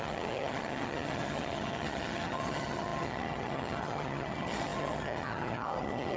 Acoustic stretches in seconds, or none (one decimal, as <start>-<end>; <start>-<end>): none